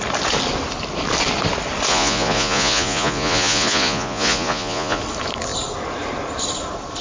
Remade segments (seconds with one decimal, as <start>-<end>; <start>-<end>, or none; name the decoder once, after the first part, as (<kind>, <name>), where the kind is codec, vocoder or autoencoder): 1.9-5.0 (vocoder, Vocos)